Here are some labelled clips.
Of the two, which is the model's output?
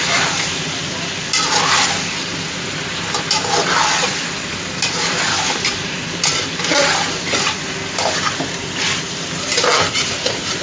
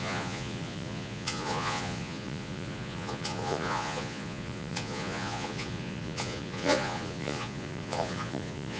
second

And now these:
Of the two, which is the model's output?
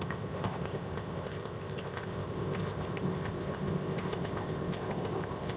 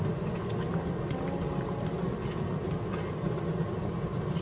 first